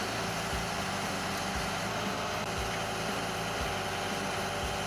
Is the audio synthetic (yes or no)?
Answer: no